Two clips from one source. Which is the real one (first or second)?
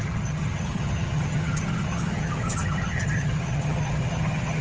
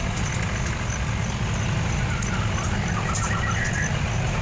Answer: second